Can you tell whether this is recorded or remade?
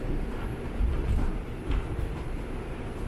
remade